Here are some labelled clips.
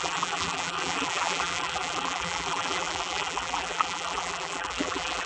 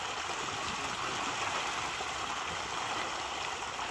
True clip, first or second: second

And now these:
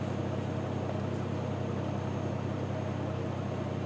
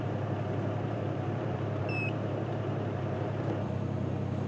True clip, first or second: first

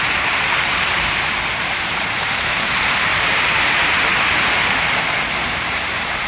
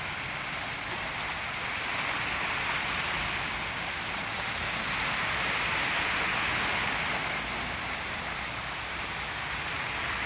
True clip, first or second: second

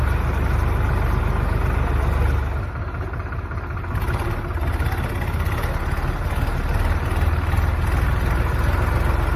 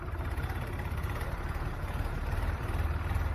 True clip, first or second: first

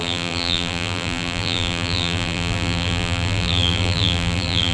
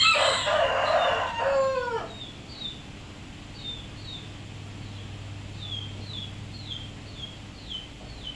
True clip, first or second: second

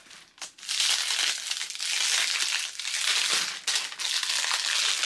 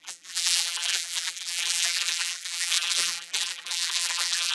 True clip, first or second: first